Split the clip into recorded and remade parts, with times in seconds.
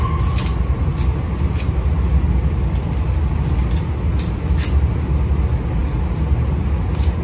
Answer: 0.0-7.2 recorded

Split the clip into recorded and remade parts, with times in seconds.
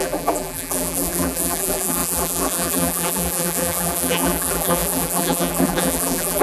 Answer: 0.0-6.4 remade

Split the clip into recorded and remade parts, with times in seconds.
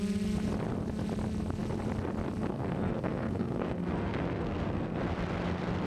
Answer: 0.0-2.5 recorded; 2.5-5.0 remade; 5.0-5.9 recorded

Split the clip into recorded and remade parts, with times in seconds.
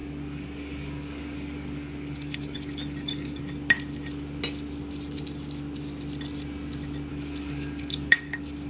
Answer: 0.0-3.4 remade; 3.4-7.1 recorded; 7.1-8.7 remade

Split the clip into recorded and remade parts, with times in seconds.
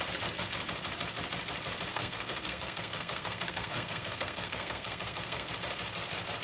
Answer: 0.0-1.9 recorded; 1.9-5.5 remade; 5.5-6.4 recorded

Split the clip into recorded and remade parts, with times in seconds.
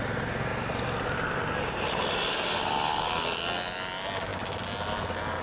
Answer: 0.0-5.4 recorded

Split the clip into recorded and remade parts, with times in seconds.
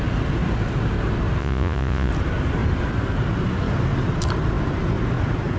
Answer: 0.0-1.4 recorded; 1.4-2.1 remade; 2.1-5.6 recorded